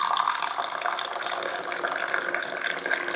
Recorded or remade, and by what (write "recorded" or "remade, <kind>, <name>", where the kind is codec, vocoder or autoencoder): recorded